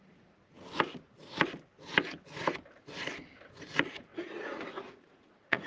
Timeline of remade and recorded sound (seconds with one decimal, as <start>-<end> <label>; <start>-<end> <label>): 0.0-0.4 remade; 0.4-3.5 recorded; 3.5-5.7 remade

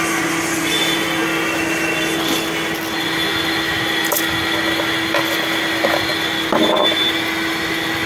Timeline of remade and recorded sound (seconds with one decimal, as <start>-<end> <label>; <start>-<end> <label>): 0.0-8.1 recorded

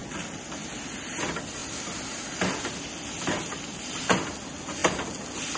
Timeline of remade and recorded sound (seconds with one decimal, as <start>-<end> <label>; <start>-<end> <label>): 0.0-5.6 recorded